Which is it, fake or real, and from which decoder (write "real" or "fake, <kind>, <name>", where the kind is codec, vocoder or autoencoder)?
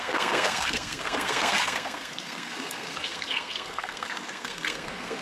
fake, codec, SNAC